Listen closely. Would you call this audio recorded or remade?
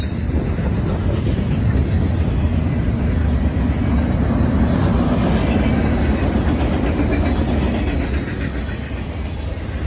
recorded